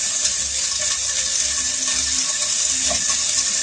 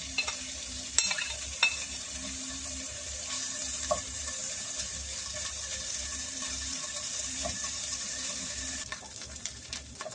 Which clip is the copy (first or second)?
second